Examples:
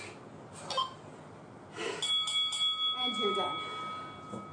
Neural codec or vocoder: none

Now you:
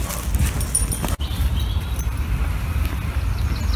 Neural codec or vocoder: none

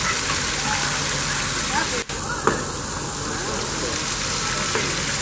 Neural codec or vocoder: none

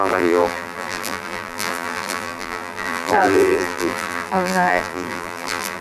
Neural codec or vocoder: vocoder, BigVGAN v2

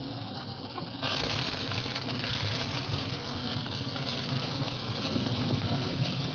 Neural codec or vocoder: codec, SNAC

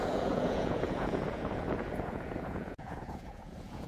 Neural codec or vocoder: vocoder, Vocos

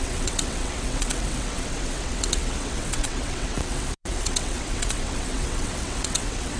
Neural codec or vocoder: vocoder, WaveNeXt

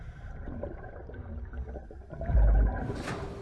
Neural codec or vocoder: none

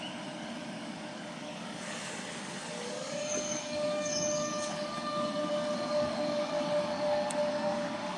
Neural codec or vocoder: codec, DAC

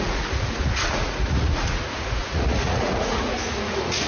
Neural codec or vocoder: vocoder, Vocos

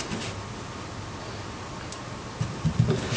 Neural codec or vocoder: none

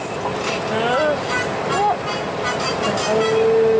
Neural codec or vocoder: none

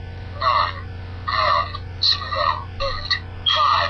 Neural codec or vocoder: none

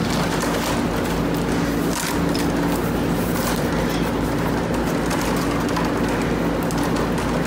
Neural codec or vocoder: none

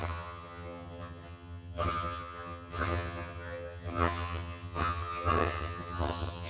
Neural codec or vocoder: vocoder, HiFi-GAN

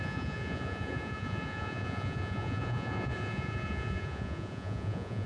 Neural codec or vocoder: vocoder, Vocos